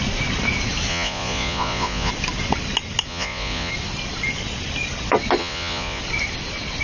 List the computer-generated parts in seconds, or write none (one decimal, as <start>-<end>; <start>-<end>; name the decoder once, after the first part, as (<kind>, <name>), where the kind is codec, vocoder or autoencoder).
0.9-2.1 (vocoder, Vocos); 3.1-3.7; 5.4-6.0